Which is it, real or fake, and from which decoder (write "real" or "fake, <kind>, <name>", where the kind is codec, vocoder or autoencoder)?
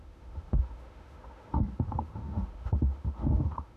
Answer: fake, autoencoder, DAC-VAE